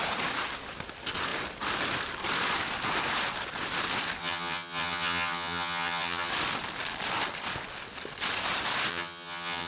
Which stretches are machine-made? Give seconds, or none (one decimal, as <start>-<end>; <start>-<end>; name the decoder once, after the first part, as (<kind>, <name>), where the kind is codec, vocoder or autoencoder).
4.2-6.3 (vocoder, HiFi-GAN); 8.9-9.7